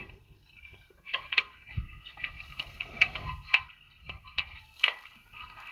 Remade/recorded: remade